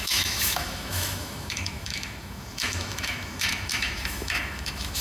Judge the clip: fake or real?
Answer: fake